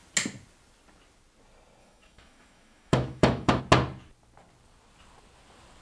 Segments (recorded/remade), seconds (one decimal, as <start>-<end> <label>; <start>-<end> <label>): 0.0-1.8 recorded; 1.8-3.6 remade; 3.6-5.8 recorded